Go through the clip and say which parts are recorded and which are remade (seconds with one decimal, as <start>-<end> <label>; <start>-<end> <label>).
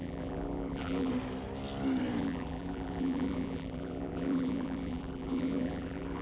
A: 0.0-1.1 remade; 1.1-2.2 recorded; 2.2-6.2 remade